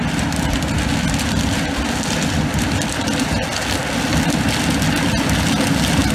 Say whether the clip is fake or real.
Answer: real